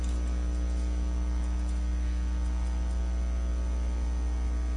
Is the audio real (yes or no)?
yes